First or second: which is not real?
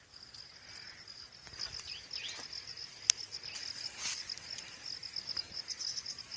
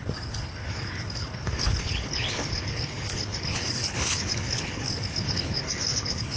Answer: second